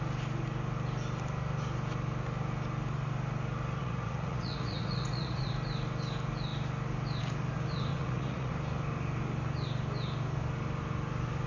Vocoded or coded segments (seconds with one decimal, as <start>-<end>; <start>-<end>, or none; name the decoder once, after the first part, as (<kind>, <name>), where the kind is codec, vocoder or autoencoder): 3.8-5.5 (vocoder, Vocos); 7.9-8.5